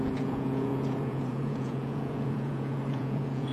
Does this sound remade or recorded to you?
remade